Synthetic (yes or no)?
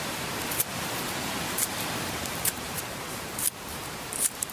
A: yes